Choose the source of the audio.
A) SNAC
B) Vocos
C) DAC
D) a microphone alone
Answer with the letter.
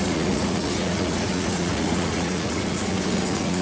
B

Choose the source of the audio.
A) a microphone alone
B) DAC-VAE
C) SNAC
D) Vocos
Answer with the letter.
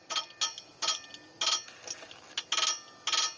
A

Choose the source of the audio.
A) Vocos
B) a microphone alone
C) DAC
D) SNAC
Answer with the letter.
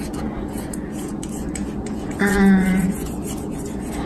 A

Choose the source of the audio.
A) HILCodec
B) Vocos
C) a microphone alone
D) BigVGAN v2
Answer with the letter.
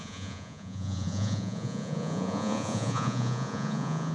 B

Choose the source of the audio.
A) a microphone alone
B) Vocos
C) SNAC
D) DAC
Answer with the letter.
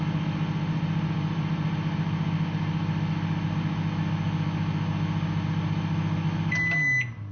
A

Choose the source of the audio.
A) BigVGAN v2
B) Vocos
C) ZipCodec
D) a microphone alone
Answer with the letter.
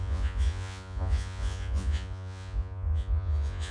B